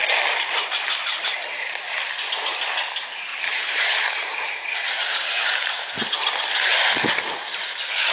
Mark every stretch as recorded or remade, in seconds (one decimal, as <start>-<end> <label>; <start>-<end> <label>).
0.0-3.3 recorded; 3.3-6.4 remade; 6.4-8.1 recorded